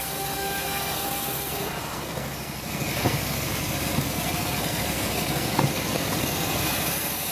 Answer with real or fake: fake